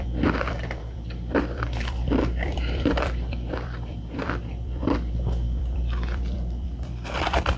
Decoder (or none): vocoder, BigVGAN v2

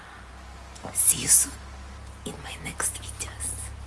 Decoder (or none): none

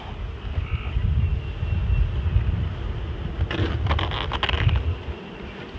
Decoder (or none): none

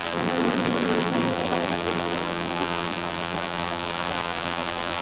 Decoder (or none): vocoder, BigVGAN v2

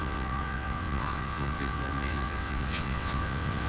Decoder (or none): vocoder, WaveNeXt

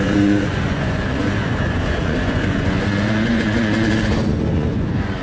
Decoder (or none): vocoder, Vocos